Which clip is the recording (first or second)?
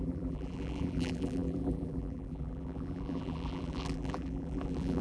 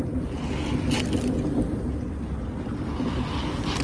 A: second